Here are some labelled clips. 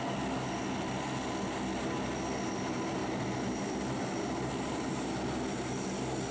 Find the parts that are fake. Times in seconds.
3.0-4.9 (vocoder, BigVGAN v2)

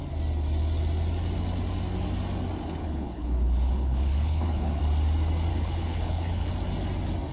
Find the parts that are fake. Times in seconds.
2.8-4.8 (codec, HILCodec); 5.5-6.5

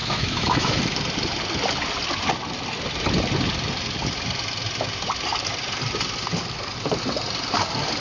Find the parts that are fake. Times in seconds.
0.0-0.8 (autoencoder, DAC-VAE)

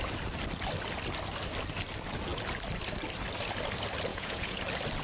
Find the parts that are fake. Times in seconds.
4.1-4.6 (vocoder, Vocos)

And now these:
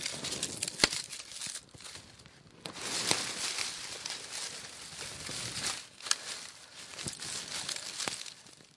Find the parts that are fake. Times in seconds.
none